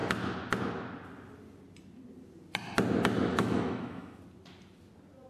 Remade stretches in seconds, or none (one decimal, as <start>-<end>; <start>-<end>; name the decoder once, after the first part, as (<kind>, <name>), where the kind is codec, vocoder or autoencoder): 3.3-4.2 (autoencoder, DAC-VAE)